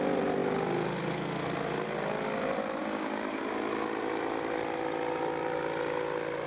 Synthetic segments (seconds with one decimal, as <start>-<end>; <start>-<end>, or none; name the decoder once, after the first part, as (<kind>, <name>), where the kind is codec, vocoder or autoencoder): 2.8-3.4 (codec, DAC)